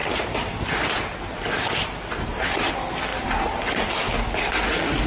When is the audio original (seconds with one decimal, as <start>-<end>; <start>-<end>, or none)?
0.0-5.1